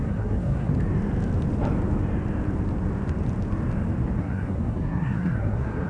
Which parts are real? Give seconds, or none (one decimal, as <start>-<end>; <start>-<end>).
0.7-4.2